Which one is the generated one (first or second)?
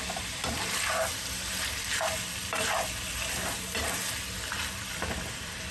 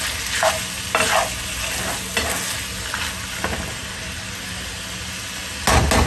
first